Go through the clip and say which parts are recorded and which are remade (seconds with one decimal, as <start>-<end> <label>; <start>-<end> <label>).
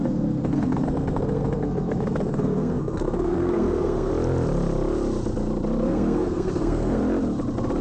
0.0-4.1 remade; 4.1-5.8 recorded; 5.8-7.0 remade; 7.0-7.8 recorded